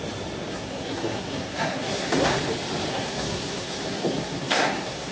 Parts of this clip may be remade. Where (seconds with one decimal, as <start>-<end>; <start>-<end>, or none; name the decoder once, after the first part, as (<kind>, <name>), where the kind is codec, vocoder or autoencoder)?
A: 0.5-2.4 (codec, SNAC); 2.9-5.1